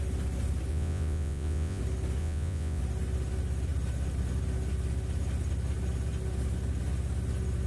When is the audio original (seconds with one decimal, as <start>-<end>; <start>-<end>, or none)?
0.0-0.7; 1.8-2.2; 2.8-7.7